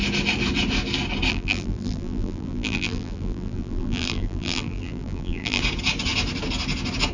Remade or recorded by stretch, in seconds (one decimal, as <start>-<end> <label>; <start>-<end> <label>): 0.0-1.3 recorded; 1.3-5.6 remade; 5.6-7.1 recorded